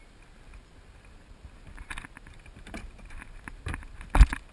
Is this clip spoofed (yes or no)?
no